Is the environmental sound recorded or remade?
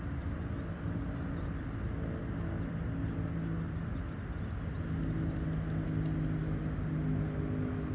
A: recorded